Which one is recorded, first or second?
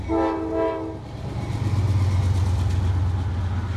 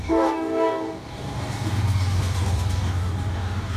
first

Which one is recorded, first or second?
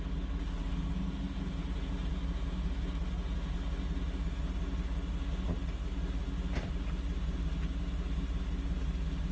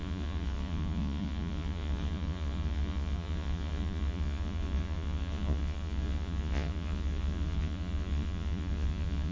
first